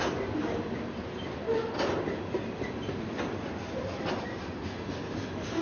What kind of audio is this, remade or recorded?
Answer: recorded